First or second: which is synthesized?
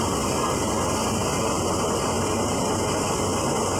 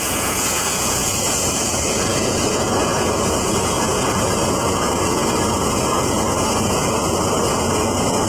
second